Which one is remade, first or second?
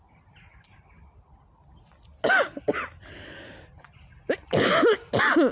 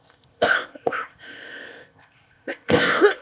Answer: second